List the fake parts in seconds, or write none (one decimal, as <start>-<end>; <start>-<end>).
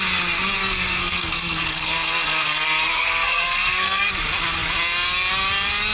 0.6-4.1